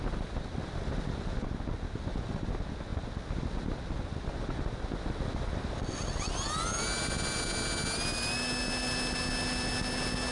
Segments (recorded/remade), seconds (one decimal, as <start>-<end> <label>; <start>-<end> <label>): 0.0-10.3 recorded